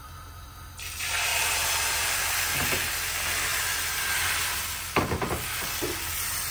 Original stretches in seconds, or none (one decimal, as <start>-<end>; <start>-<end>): 0.0-1.3; 2.2-6.5